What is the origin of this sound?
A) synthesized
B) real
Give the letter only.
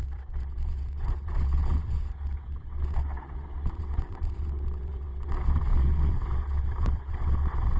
A